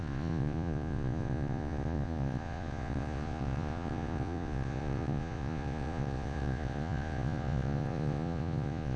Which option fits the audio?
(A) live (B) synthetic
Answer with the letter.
B